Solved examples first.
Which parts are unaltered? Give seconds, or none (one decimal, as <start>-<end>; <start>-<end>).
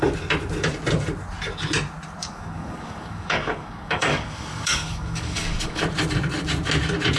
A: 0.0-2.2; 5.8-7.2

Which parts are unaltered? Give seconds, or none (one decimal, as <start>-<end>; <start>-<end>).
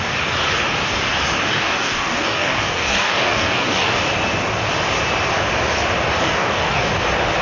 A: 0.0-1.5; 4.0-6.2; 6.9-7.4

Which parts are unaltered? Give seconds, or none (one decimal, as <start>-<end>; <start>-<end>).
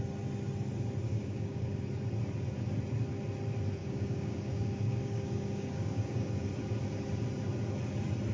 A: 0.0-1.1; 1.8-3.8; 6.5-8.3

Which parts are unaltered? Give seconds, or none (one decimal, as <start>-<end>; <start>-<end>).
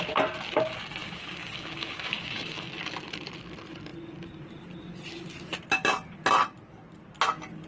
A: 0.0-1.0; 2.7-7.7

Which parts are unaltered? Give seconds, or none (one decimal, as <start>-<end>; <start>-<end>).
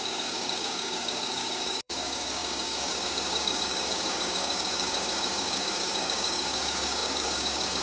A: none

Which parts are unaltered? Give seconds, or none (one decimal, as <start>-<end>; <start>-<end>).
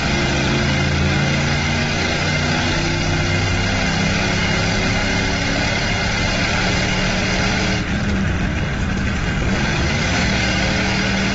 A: 0.0-1.8; 3.2-8.5; 10.6-11.3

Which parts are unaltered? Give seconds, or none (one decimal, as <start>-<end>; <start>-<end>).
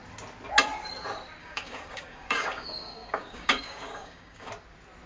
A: 0.0-1.4; 4.5-5.1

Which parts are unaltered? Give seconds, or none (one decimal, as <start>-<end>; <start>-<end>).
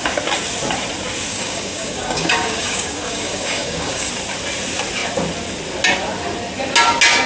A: 0.0-1.3; 4.1-7.3